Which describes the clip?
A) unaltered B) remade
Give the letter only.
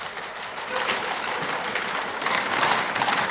A